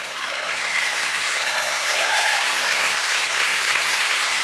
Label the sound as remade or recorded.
remade